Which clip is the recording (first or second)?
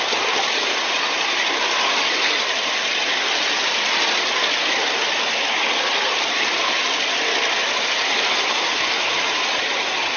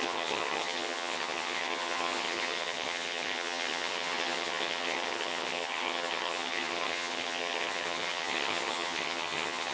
first